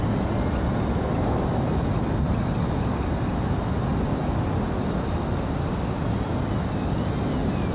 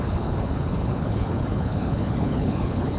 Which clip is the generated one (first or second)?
second